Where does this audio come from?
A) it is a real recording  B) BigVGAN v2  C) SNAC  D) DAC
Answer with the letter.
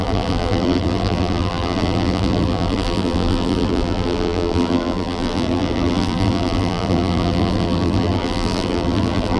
B